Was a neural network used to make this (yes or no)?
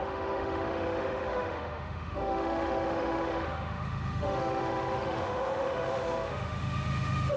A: yes